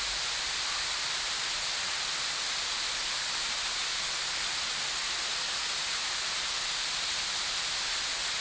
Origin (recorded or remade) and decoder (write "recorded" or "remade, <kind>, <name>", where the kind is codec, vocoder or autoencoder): recorded